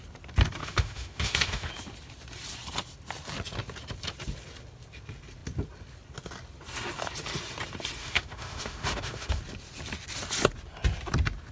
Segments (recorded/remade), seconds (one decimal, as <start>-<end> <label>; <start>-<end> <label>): 0.0-0.6 recorded; 0.6-1.7 remade; 1.7-8.0 recorded; 8.0-9.4 remade; 9.4-11.5 recorded